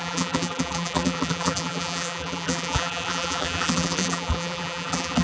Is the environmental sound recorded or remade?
remade